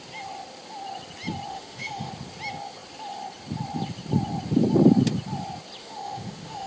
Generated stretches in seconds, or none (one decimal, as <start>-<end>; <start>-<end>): 1.5-2.1; 5.8-6.7